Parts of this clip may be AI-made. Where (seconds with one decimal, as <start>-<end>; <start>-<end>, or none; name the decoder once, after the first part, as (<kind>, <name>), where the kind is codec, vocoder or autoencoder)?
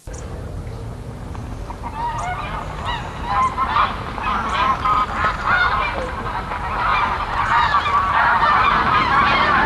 5.2-5.7 (vocoder, Vocos); 6.9-7.6